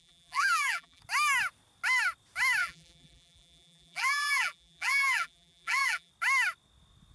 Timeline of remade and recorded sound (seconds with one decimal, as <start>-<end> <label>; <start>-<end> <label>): 0.0-1.0 remade; 1.0-2.6 recorded; 2.6-6.1 remade; 6.1-7.1 recorded